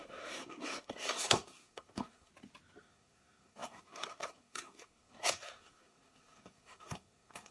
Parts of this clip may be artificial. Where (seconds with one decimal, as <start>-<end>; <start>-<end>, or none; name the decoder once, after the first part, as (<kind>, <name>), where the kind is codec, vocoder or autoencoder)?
0.0-2.3 (codec, SNAC); 2.8-7.5